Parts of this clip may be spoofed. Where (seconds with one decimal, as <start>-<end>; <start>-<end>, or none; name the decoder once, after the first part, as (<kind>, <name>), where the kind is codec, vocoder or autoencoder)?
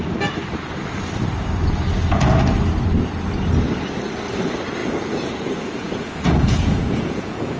4.8-7.6 (vocoder, Vocos)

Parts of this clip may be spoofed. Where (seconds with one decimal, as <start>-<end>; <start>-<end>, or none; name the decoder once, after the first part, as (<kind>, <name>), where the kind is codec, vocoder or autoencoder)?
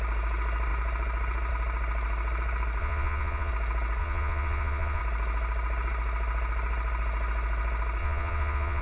2.8-3.5 (vocoder, Vocos); 4.0-5.0; 8.0-8.8